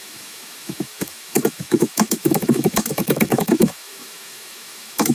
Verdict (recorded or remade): remade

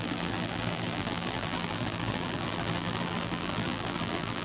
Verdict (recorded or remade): remade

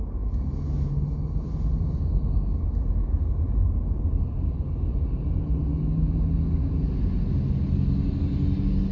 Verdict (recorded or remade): recorded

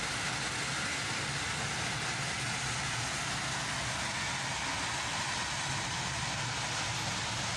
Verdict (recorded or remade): recorded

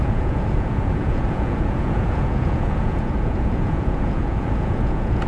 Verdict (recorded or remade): remade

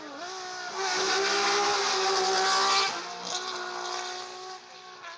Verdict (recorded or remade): recorded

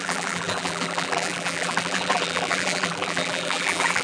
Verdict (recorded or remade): remade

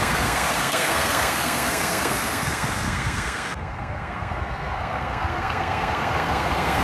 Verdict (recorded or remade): remade